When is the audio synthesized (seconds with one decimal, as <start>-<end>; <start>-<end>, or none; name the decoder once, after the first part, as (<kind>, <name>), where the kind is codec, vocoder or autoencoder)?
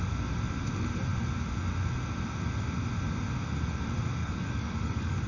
4.2-5.3 (codec, DAC)